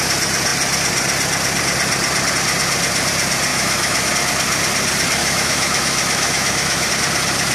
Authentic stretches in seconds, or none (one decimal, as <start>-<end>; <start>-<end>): 0.0-3.5; 4.1-5.2; 6.9-7.5

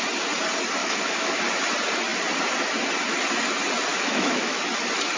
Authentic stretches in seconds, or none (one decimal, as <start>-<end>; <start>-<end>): 0.0-0.8; 1.4-3.9; 4.6-5.2

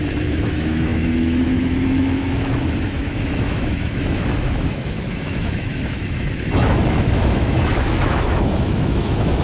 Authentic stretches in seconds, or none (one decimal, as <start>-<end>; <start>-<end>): none

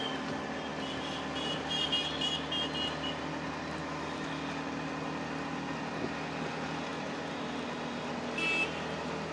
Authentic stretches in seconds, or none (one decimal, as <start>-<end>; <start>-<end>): 0.0-3.8; 4.4-9.3